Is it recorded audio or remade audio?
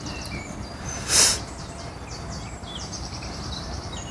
remade